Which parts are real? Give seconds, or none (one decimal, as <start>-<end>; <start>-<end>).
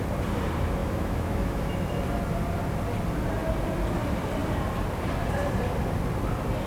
0.0-0.8; 1.7-6.7